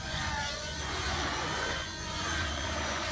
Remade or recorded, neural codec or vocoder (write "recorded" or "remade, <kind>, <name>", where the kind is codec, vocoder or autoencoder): remade, vocoder, Vocos